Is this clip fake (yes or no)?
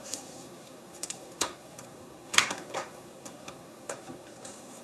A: yes